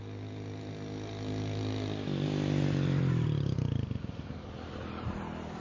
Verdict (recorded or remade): recorded